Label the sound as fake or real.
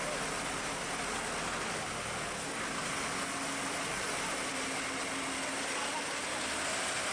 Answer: real